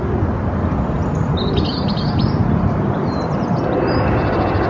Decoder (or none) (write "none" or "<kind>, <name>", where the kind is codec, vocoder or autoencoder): none